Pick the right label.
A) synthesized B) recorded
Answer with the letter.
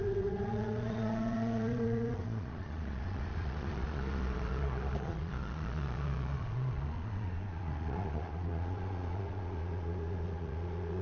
A